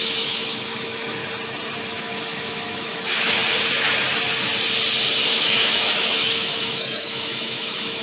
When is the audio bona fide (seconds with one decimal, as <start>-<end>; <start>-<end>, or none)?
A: 1.2-1.9; 3.4-5.3